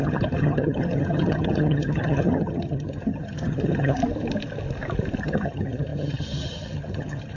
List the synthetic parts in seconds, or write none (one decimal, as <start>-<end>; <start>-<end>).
0.0-4.0; 5.2-7.4